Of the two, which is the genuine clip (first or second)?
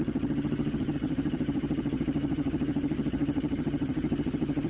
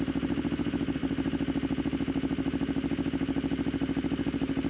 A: second